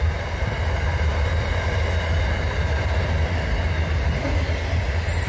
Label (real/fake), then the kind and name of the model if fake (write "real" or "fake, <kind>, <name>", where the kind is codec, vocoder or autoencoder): real